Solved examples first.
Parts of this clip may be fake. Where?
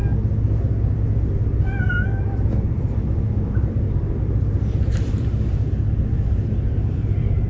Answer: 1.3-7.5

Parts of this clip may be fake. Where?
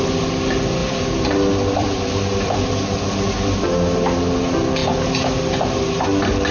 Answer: 0.8-2.7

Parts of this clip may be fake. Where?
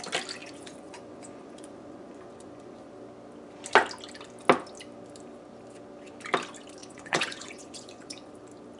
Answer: 0.4-2.9; 6.8-8.3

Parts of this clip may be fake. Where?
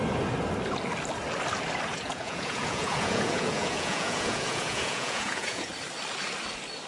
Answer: 1.9-5.7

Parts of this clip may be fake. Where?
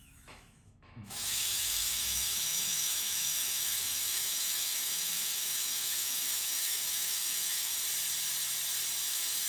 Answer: 0.0-7.7; 9.1-9.5